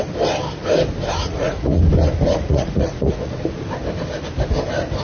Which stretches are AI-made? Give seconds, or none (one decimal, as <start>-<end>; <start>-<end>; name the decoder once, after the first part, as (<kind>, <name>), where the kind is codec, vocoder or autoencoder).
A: 1.2-1.8 (vocoder, Vocos); 2.3-3.3